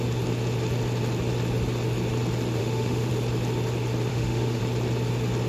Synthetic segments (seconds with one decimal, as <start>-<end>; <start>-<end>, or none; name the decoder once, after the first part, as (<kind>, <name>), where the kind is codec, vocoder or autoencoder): 2.6-3.1 (autoencoder, DAC-VAE); 4.1-4.6